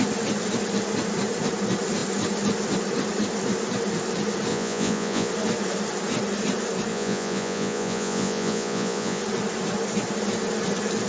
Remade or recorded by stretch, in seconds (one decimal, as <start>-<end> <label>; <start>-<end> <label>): 0.0-4.5 recorded; 4.5-5.3 remade; 5.3-6.9 recorded; 6.9-9.2 remade; 9.2-11.1 recorded